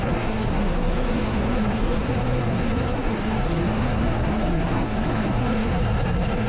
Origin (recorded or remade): remade